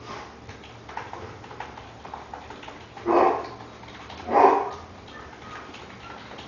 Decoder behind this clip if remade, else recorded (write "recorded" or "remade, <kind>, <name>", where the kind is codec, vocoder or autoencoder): recorded